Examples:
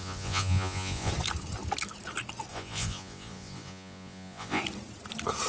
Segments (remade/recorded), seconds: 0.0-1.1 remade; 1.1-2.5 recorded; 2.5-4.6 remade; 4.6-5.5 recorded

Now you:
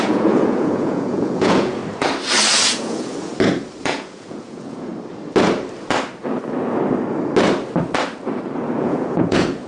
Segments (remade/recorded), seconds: 0.0-1.8 remade; 1.8-2.7 recorded; 2.7-3.3 remade; 3.3-3.8 recorded; 3.8-4.9 remade; 4.9-8.8 recorded; 8.8-9.7 remade

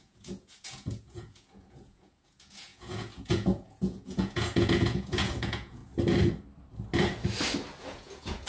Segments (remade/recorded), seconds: 0.0-5.8 remade; 5.8-7.8 recorded; 7.8-8.5 remade

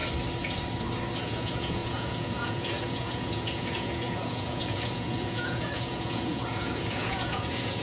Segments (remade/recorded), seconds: 0.0-1.2 recorded; 1.2-7.8 remade

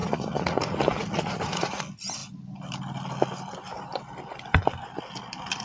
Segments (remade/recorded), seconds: 0.0-1.8 remade; 1.8-5.6 recorded

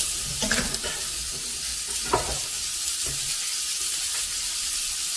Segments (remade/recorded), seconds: 0.0-5.2 recorded